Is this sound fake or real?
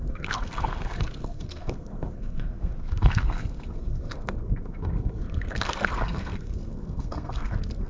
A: fake